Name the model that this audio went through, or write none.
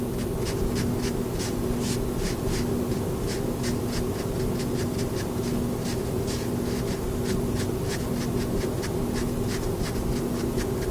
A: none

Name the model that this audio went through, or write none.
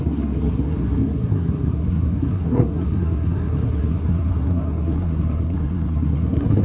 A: codec, SNAC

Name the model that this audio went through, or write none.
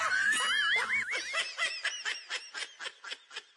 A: none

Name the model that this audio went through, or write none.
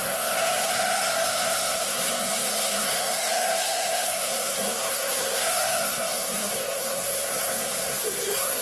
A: codec, SNAC